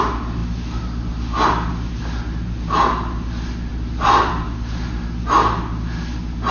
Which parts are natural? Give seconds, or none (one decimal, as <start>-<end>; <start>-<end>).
0.0-6.5